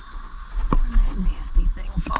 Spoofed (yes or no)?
no